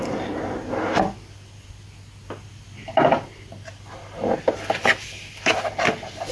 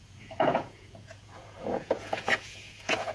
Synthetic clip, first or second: second